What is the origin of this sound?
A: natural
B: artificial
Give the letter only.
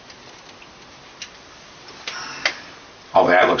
A